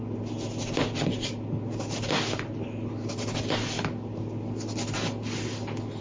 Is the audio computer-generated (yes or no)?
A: no